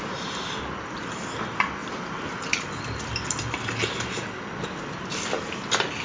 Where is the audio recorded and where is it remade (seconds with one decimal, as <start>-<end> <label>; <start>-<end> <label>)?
0.0-6.0 recorded